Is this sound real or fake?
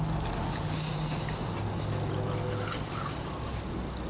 real